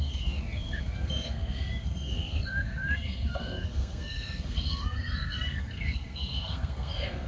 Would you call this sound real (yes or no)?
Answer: no